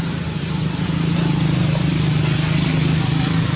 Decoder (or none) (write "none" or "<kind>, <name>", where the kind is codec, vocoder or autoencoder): none